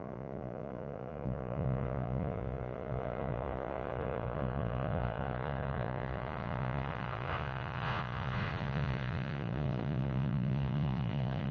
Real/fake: fake